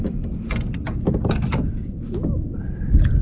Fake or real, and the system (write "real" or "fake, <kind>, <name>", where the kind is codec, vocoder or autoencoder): real